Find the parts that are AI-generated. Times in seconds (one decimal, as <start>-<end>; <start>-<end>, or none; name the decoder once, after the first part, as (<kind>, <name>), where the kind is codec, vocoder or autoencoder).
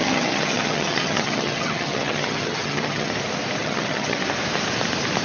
0.0-3.1 (vocoder, HiFi-GAN); 3.6-4.2